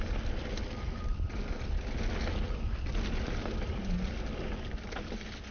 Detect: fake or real real